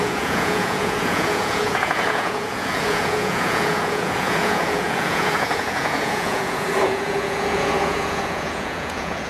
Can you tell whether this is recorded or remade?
remade